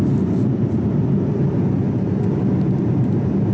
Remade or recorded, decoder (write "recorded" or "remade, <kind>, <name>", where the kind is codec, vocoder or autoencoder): recorded